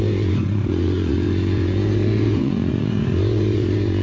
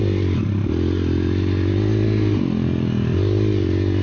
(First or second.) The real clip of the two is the second